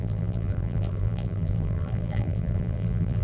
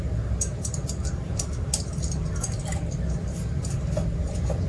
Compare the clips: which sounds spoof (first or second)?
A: first